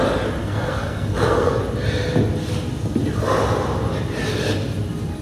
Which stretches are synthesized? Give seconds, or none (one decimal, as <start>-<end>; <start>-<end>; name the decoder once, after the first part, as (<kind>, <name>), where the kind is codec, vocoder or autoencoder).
0.4-1.6 (codec, SNAC)